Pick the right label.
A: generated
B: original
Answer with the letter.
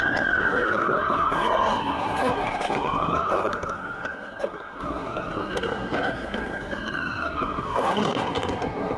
A